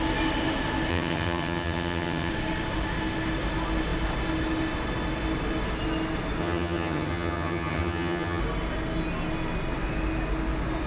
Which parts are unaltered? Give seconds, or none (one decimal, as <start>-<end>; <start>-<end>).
0.0-0.9; 2.3-6.4; 8.4-10.9